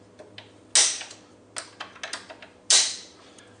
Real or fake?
real